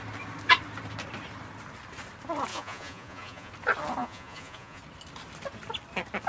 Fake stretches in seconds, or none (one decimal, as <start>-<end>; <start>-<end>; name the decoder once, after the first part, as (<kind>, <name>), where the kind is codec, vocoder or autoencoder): 2.5-3.5 (vocoder, Vocos); 4.0-4.8

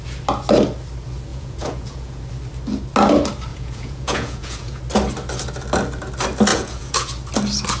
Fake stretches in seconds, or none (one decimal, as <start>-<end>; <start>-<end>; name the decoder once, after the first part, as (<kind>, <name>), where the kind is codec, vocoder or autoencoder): 1.3-2.2 (vocoder, Vocos); 3.5-4.8; 6.5-7.1

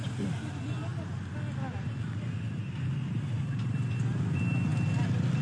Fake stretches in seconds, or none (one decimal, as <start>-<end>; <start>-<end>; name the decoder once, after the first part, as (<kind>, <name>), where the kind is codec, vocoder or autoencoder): none

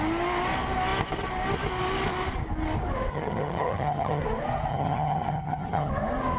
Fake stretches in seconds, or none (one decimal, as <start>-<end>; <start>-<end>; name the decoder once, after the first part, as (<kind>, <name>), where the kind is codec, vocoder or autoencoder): 3.1-4.2 (vocoder, HiFi-GAN); 4.7-5.9

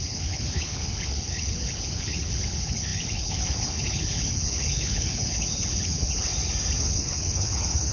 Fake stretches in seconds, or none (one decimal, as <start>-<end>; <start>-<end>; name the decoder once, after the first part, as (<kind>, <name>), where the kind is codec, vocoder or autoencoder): 0.0-6.3 (codec, HILCodec); 6.8-7.9

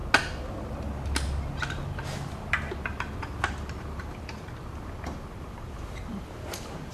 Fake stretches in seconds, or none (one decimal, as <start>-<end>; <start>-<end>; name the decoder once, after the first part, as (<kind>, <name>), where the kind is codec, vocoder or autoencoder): 3.8-6.9 (vocoder, BigVGAN v2)

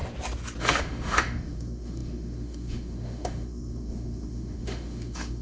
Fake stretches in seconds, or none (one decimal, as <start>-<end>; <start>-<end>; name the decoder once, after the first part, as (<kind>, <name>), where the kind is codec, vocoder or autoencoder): 0.6-5.4 (autoencoder, DAC-VAE)

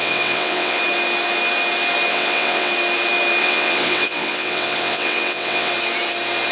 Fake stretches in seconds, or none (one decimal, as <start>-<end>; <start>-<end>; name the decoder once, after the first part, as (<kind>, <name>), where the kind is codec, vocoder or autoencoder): 0.0-0.8 (vocoder, WaveNeXt); 2.1-2.7; 3.4-5.7